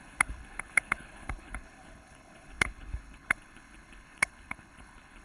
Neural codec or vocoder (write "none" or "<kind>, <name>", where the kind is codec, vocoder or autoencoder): codec, HILCodec